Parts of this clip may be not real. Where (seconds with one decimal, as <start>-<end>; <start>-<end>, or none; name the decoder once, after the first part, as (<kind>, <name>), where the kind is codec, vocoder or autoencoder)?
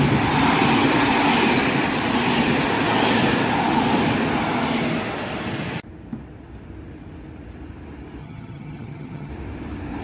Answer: 8.2-9.3 (vocoder, HiFi-GAN)